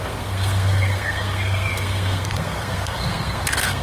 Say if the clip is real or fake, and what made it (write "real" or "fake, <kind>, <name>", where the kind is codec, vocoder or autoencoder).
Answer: fake, codec, SNAC